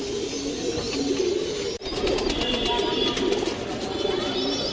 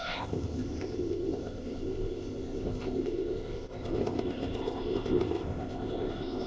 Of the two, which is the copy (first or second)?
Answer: second